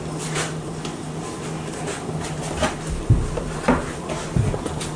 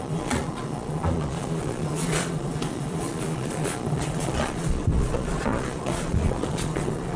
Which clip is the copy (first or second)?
second